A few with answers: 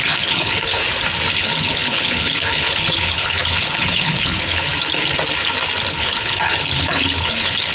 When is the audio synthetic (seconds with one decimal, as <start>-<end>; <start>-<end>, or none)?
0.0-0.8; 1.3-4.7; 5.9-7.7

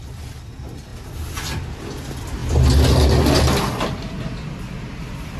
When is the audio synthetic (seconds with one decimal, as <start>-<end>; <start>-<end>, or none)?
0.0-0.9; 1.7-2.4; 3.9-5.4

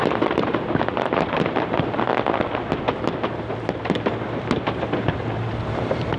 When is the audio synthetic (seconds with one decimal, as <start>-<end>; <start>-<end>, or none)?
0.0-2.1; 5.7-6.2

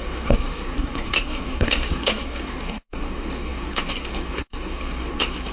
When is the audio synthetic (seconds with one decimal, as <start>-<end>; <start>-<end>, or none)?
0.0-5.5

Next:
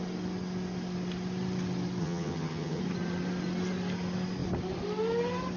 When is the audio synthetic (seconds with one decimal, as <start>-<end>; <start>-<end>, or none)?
2.0-2.8